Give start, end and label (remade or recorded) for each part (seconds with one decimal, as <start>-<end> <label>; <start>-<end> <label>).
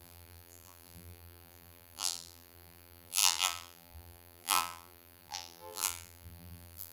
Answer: 0.0-6.9 remade